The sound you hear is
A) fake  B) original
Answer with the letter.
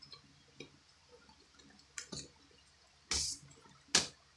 B